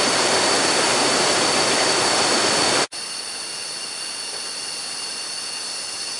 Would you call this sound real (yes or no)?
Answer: yes